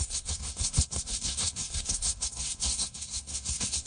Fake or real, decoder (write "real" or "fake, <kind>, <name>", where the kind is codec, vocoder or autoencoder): fake, codec, SNAC